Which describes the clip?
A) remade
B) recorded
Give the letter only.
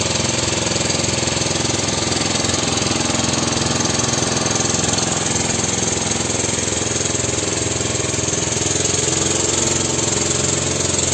B